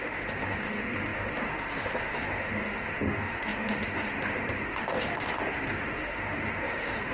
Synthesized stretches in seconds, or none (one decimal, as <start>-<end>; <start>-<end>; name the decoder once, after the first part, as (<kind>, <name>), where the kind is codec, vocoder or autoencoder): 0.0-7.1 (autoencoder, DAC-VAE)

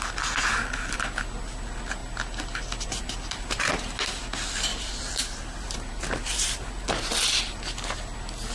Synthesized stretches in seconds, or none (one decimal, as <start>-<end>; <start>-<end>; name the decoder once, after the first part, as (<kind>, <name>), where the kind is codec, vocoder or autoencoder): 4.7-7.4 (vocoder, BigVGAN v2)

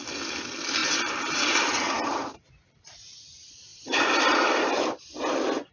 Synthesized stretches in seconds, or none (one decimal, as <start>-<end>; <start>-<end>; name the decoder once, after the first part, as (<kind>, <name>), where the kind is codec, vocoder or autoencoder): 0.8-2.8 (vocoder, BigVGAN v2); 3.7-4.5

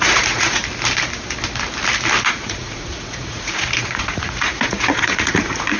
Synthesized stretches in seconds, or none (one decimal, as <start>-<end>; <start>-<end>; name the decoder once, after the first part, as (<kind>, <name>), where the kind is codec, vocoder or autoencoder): 0.0-0.6 (vocoder, Vocos); 2.3-5.8

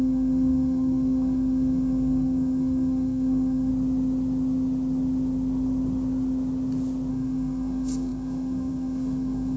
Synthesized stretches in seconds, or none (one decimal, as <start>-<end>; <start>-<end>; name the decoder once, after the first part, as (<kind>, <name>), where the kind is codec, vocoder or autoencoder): 0.0-3.7 (codec, SNAC); 7.1-9.6

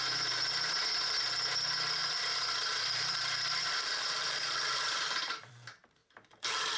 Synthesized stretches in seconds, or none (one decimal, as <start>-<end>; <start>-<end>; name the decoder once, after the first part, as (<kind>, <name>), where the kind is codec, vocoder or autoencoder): 2.0-5.5 (vocoder, BigVGAN v2); 6.0-6.8

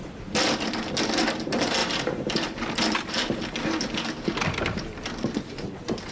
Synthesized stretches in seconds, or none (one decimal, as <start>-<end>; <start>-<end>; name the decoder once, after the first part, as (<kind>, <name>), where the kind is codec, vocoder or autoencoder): 0.0-0.7 (vocoder, BigVGAN v2); 1.8-2.3